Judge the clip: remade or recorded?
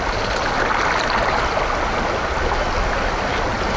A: recorded